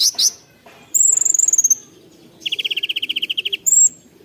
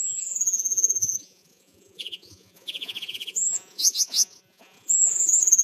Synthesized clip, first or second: second